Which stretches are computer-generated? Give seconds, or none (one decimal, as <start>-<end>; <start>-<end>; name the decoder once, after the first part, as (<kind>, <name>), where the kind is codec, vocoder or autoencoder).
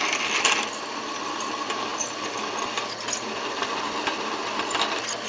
none